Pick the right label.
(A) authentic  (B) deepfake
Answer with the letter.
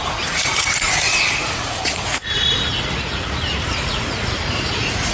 B